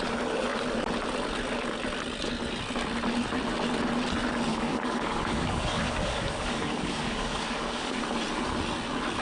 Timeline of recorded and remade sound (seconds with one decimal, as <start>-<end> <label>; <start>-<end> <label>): 0.0-4.5 recorded; 4.5-8.0 remade; 8.0-9.2 recorded